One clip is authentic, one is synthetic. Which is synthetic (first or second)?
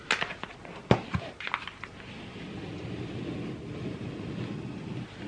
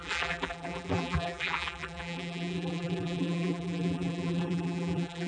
second